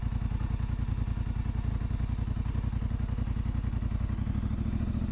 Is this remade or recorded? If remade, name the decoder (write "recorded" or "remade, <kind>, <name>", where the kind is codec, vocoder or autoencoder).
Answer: recorded